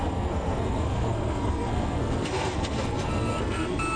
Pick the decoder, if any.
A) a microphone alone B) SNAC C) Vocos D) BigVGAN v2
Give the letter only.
B